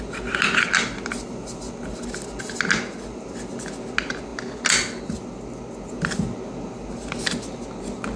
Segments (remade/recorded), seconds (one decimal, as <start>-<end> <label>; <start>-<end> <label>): 0.0-8.2 recorded